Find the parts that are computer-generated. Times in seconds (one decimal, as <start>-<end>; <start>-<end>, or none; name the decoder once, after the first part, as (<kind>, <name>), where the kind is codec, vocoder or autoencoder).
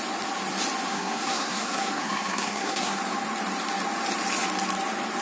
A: 0.9-3.0 (codec, SNAC)